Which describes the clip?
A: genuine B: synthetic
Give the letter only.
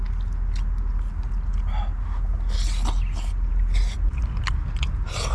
A